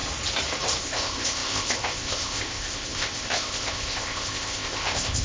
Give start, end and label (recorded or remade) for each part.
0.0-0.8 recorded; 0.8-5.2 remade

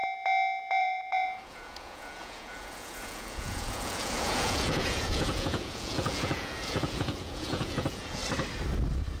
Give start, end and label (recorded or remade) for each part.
0.0-0.8 recorded; 0.8-8.2 remade; 8.2-9.2 recorded